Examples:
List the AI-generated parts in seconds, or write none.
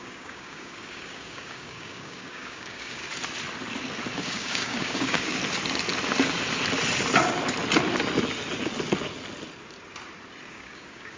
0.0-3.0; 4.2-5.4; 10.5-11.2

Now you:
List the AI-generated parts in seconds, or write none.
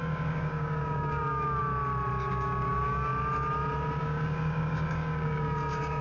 0.0-1.6; 2.3-3.1; 4.0-6.0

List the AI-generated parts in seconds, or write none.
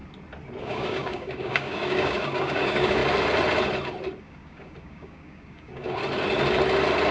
0.6-3.0; 4.2-6.0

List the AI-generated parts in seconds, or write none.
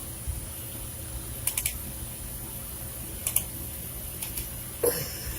none